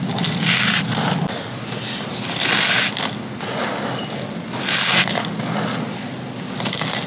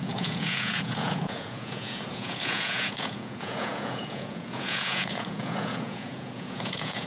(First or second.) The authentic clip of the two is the first